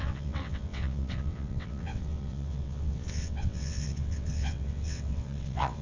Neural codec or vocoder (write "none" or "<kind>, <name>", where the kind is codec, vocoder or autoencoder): vocoder, WaveNeXt